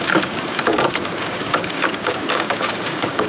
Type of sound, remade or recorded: remade